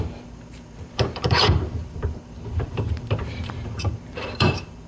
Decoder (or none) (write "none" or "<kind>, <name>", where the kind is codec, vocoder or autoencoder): vocoder, BigVGAN v2